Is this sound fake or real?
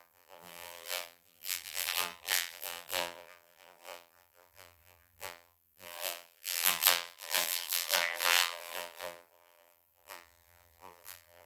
fake